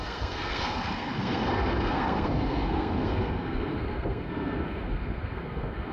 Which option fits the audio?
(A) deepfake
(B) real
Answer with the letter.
A